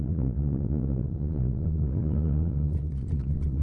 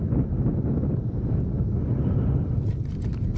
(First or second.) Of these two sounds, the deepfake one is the first